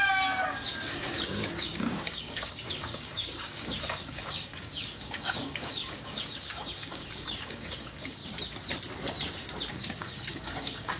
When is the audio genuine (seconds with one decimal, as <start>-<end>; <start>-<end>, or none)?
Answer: 8.2-9.7